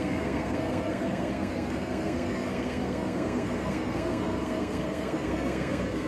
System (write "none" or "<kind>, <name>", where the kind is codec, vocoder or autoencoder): codec, SNAC